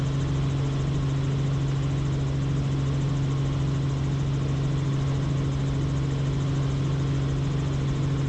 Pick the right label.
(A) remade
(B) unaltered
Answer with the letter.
B